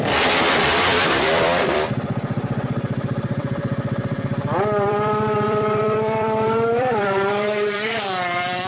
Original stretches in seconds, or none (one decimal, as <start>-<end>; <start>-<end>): none